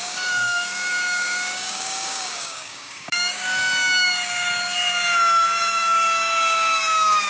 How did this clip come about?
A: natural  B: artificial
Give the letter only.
B